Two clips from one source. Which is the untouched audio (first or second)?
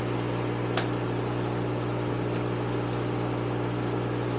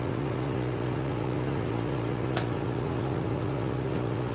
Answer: first